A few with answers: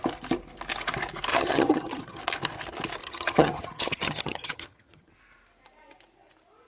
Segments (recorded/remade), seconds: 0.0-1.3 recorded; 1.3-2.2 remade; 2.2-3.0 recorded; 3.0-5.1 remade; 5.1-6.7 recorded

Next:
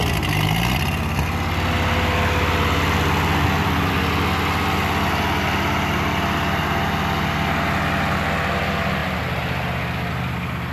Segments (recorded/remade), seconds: 0.0-10.7 recorded

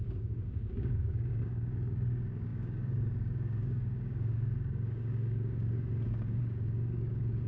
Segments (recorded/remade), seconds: 0.0-7.5 remade